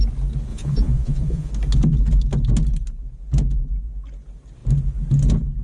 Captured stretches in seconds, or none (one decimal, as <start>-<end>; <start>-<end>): 0.0-0.5; 1.5-5.6